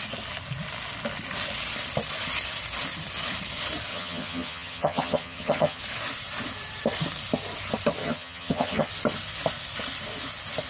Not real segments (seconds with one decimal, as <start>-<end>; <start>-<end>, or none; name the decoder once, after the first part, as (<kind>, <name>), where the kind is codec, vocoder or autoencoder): 3.9-5.8 (vocoder, HiFi-GAN); 8.0-8.9